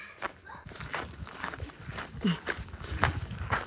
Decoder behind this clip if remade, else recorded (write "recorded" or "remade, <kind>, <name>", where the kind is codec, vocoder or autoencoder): remade, codec, DAC